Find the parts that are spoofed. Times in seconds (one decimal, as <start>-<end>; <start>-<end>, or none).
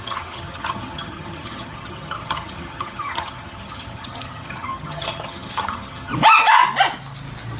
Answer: 0.0-6.1